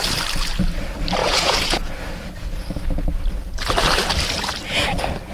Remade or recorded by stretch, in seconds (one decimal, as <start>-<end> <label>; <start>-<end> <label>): 0.0-1.2 recorded; 1.2-1.9 remade; 1.9-5.3 recorded